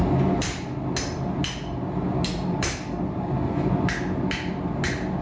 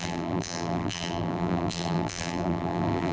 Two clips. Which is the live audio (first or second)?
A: first